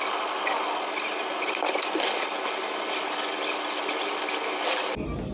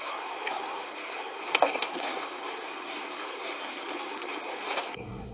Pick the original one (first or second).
first